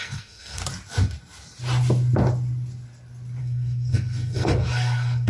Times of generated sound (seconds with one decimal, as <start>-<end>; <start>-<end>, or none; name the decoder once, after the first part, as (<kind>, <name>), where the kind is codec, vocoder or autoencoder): 0.0-0.6 (codec, SNAC); 3.4-5.3